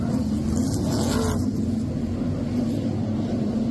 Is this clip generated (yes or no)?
no